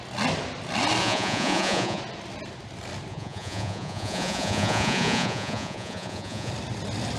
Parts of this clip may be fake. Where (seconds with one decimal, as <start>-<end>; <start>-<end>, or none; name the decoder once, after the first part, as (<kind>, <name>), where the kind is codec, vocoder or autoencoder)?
1.0-2.0 (vocoder, Vocos); 3.1-6.5